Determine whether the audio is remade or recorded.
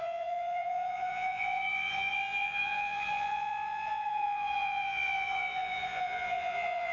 remade